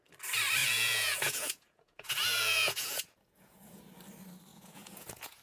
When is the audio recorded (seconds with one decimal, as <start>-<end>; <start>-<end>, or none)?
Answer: 0.0-0.6; 3.8-4.5